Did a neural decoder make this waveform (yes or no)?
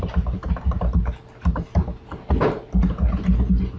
no